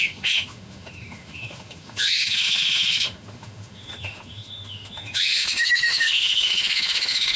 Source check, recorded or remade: remade